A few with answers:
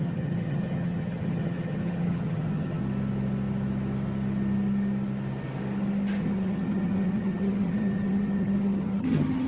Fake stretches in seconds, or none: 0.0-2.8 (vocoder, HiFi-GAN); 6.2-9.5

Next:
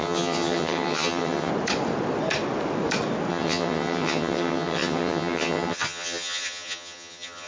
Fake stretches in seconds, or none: 0.0-1.5 (vocoder, HiFi-GAN); 3.3-7.5

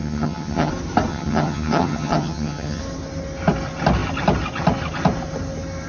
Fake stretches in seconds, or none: 0.0-0.7 (vocoder, HiFi-GAN); 1.1-2.8

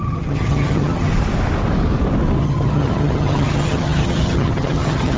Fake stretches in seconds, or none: 0.0-1.1 (vocoder, HiFi-GAN); 2.4-5.2

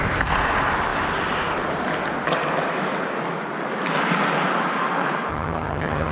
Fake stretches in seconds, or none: 5.3-6.1 (vocoder, HiFi-GAN)

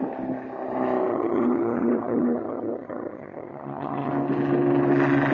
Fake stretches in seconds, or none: 1.1-4.1 (vocoder, HiFi-GAN)

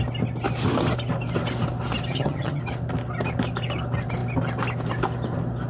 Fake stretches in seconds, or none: 2.1-2.6 (vocoder, HiFi-GAN)